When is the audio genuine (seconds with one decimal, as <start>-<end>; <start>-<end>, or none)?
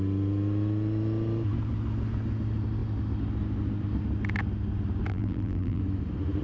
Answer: 0.0-5.1; 5.8-6.4